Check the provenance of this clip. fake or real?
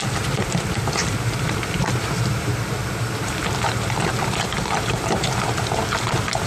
fake